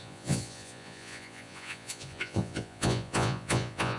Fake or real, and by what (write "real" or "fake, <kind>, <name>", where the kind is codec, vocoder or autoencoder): fake, vocoder, Vocos